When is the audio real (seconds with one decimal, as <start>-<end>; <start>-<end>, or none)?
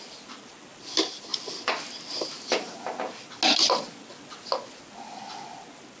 0.0-6.0